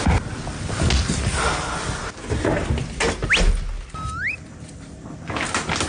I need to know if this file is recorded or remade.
recorded